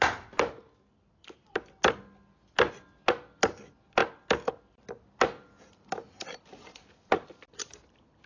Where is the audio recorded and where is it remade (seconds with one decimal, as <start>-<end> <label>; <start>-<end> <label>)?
0.0-8.3 recorded